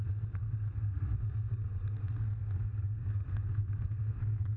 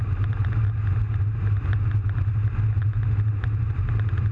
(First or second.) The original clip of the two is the second